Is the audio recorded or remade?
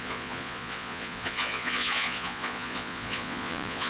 remade